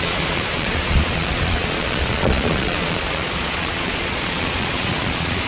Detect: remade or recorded remade